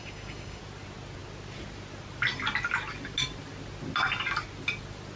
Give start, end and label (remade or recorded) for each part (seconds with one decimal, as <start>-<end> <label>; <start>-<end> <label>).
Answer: 0.0-0.6 remade; 0.6-5.2 recorded